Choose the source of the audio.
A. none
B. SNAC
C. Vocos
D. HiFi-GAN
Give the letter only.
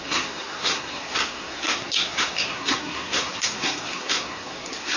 B